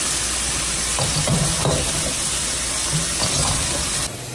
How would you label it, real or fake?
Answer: real